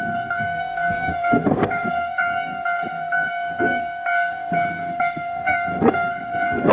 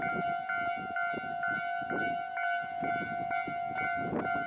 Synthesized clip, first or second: first